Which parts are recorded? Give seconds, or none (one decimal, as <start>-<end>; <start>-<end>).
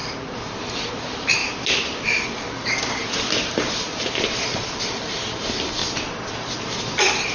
1.4-3.5; 5.8-6.6